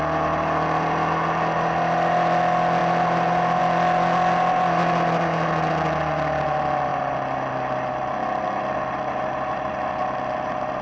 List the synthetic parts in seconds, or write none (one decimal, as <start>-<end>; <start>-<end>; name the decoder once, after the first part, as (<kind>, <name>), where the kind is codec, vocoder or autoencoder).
none